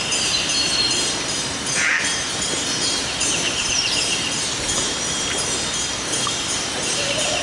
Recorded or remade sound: remade